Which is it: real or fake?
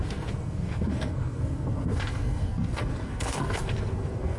fake